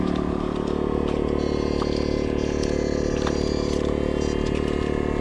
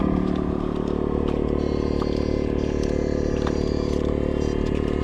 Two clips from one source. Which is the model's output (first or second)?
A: second